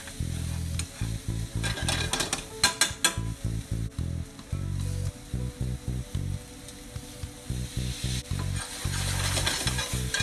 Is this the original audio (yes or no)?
yes